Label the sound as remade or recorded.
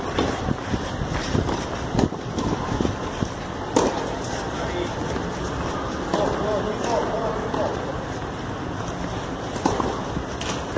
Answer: recorded